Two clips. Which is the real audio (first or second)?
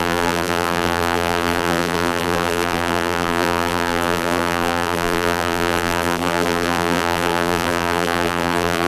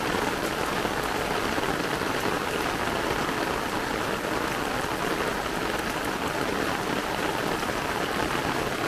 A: second